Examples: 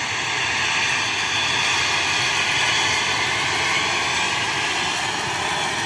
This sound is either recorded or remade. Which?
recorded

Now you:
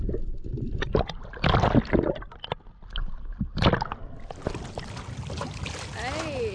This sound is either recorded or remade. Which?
recorded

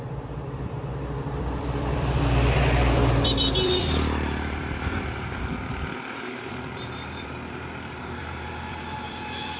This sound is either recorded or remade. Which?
remade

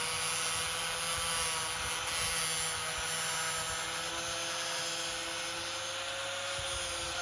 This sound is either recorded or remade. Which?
recorded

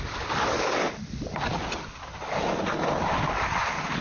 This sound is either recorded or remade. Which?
recorded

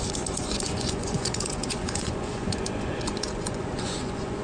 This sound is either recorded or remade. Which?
remade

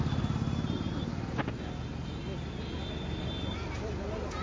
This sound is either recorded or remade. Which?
recorded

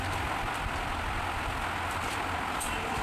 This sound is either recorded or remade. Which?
recorded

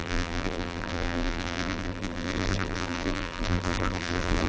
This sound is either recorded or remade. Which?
remade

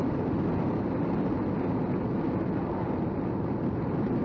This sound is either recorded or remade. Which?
recorded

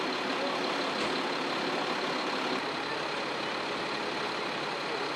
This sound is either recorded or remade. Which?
recorded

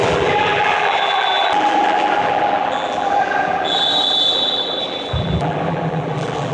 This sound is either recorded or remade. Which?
remade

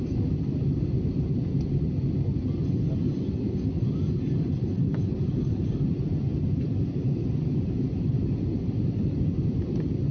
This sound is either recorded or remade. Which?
recorded